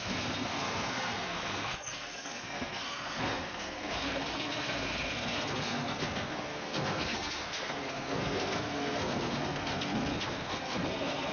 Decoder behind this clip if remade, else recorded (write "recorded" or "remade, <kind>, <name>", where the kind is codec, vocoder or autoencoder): remade, codec, SNAC